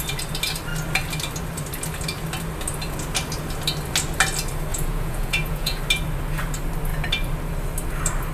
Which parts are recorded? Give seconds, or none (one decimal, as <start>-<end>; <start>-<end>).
0.0-4.7; 5.8-8.3